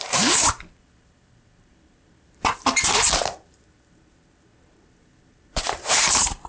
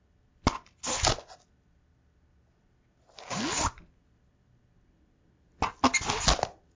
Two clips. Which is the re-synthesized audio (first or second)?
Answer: first